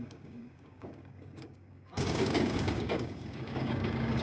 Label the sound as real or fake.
fake